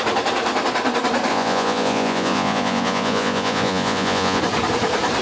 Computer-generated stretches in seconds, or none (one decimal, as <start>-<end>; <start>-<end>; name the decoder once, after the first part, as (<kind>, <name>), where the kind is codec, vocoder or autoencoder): 1.3-4.4 (vocoder, Vocos)